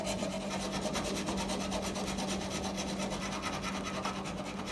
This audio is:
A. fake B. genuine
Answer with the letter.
B